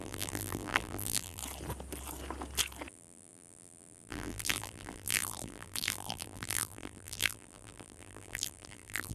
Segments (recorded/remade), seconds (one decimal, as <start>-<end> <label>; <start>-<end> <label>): 0.0-1.4 remade; 1.4-2.9 recorded; 2.9-9.1 remade